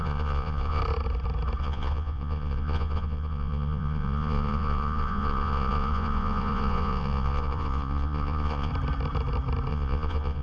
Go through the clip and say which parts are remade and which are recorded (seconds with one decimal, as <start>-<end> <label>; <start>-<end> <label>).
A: 0.0-0.8 remade; 0.8-1.6 recorded; 1.6-8.7 remade; 8.7-9.7 recorded; 9.7-10.4 remade